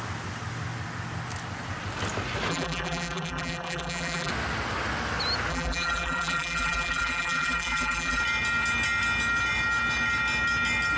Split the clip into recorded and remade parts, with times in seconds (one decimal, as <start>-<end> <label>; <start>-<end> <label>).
0.0-2.5 recorded; 2.5-4.3 remade; 4.3-5.5 recorded; 5.5-8.2 remade; 8.2-11.0 recorded